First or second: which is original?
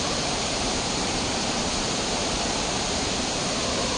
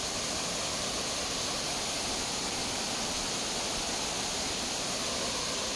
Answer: second